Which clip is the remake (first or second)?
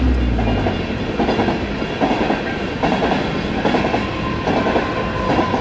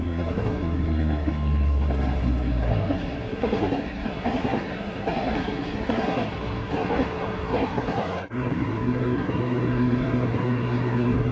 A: second